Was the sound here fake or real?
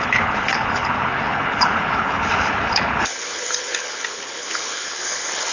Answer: fake